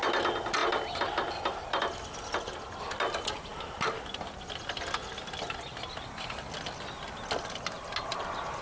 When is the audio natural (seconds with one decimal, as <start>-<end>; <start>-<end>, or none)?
0.0-8.6